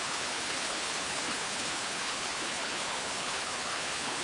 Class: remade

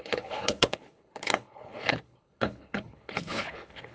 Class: remade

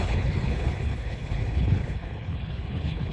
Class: remade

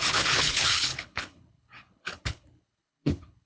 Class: remade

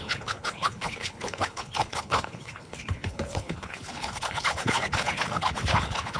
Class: remade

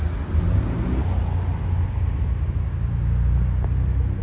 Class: recorded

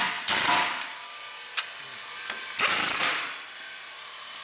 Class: recorded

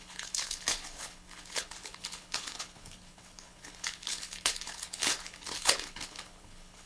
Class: remade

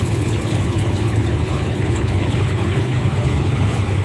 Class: remade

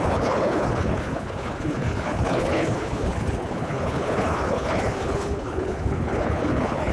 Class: remade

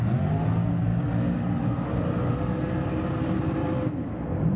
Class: recorded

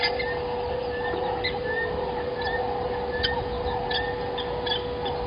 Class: recorded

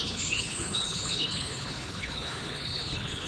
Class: remade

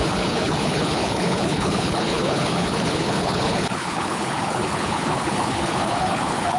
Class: remade